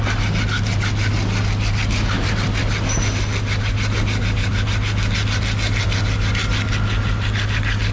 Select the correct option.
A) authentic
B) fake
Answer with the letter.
A